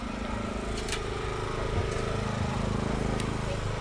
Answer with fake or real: real